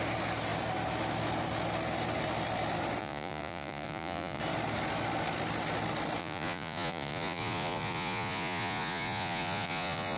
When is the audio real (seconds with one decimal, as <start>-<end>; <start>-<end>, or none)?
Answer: 0.0-3.0; 4.4-6.2